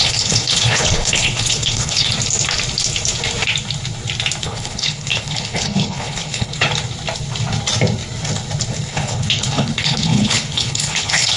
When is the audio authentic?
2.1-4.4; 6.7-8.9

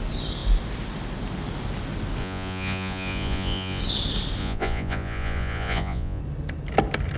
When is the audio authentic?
0.0-2.2; 3.8-4.4; 6.2-7.2

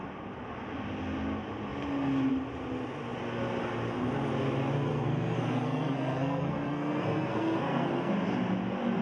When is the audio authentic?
0.0-4.9; 8.1-9.0

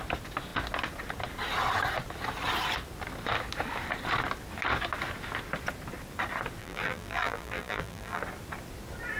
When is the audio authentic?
0.0-6.6; 8.2-9.2

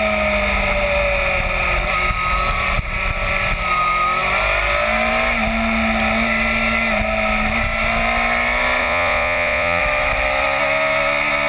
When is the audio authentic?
0.0-8.8; 9.8-11.5

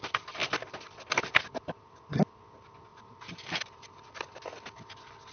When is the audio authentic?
0.0-2.9; 4.1-5.3

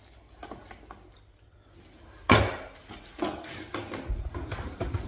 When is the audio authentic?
0.0-5.1

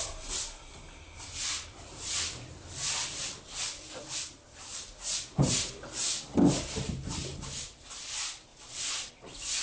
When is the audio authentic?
0.0-8.5; 9.1-9.6